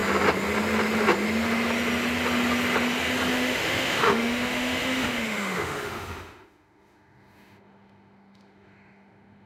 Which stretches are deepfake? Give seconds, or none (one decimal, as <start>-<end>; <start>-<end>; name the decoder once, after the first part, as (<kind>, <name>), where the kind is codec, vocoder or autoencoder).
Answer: 3.3-9.5 (autoencoder, DAC-VAE)